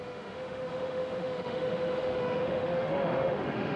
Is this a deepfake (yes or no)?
yes